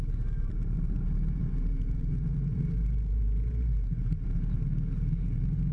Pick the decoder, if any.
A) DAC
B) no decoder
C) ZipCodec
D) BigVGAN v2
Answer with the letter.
D